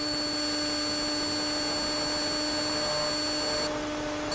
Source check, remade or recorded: recorded